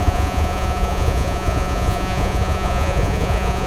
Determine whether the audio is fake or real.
fake